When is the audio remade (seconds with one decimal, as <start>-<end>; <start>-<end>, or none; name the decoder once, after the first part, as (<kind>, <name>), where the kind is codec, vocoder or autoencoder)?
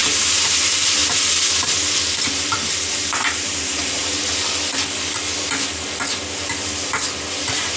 0.0-1.0 (vocoder, BigVGAN v2); 2.9-4.0; 7.3-7.8